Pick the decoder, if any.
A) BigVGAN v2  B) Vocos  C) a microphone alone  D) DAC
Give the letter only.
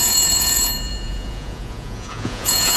B